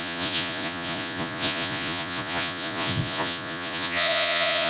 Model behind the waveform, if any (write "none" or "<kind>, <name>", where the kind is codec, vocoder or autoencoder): vocoder, Vocos